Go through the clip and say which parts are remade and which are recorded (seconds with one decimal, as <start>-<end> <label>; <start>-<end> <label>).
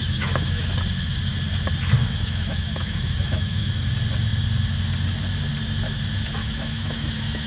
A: 0.0-0.6 remade; 0.6-2.0 recorded; 2.0-3.7 remade; 3.7-6.4 recorded; 6.4-7.5 remade